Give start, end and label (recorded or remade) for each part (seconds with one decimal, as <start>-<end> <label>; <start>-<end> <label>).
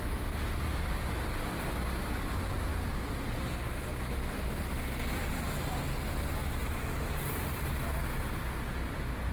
0.0-2.7 recorded; 2.7-3.4 remade; 3.4-9.3 recorded